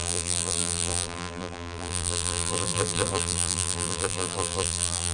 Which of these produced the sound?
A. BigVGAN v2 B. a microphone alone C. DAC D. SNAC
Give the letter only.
A